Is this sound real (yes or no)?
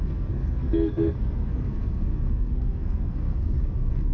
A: no